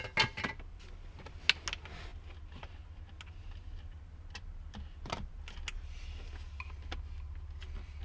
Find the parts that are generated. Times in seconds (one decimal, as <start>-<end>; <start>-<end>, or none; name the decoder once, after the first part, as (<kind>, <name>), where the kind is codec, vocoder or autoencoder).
none